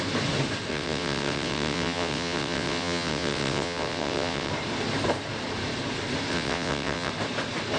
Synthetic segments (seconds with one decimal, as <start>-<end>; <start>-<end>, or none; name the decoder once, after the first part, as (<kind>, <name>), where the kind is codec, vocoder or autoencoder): 0.7-4.5 (vocoder, WaveNeXt); 6.3-7.1